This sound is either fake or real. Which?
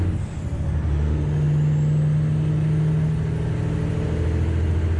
real